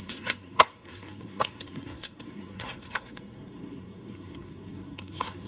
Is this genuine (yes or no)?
no